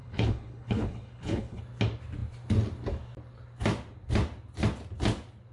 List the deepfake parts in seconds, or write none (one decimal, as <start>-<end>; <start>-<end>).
0.0-1.6

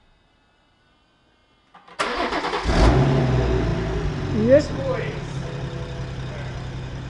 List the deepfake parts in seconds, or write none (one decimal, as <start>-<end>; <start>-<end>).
none

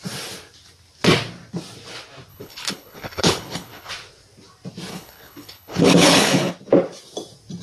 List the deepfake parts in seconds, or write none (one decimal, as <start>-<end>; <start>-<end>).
2.3-3.9; 4.9-6.5

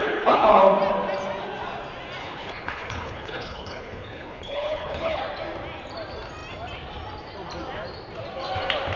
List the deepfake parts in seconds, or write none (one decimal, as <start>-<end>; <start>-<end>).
0.0-0.6; 2.2-5.2